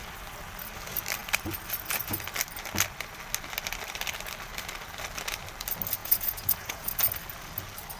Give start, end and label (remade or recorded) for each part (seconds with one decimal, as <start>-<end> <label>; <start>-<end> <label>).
0.0-6.0 recorded; 6.0-6.9 remade; 6.9-8.0 recorded